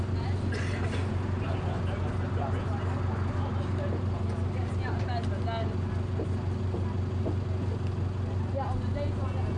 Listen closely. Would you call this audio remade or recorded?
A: recorded